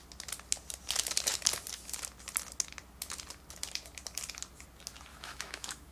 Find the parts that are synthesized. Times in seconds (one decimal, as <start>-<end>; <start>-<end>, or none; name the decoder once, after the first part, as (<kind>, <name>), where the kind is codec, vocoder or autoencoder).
5.1-5.9 (autoencoder, DAC-VAE)